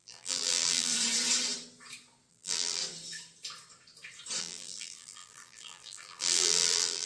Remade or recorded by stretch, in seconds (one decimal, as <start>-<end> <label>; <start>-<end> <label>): 0.0-0.9 remade; 0.9-2.3 recorded; 2.3-2.8 remade; 2.8-4.4 recorded; 4.4-7.1 remade